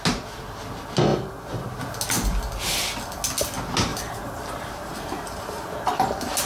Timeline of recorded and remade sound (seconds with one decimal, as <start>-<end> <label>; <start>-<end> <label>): 0.0-1.1 recorded; 1.1-1.8 remade; 1.8-3.9 recorded; 3.9-5.8 remade; 5.8-6.5 recorded